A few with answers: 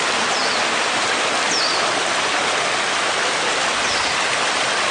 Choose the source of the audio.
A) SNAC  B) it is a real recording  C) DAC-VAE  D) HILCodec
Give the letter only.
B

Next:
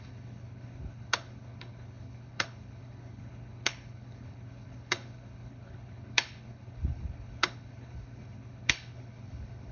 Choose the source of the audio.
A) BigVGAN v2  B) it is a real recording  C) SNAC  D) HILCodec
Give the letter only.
D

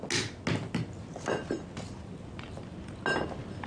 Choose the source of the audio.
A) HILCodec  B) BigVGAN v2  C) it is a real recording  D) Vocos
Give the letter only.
C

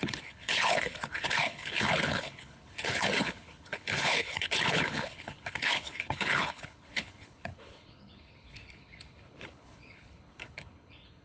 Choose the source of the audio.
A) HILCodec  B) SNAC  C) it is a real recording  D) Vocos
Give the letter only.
A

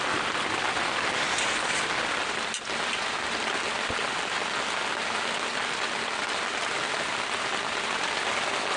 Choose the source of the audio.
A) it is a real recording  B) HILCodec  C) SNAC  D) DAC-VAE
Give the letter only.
A